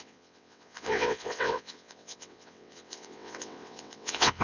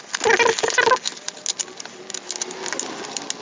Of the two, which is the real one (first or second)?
second